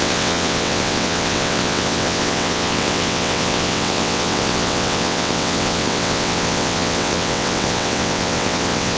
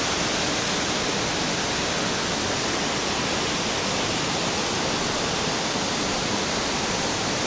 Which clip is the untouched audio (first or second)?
second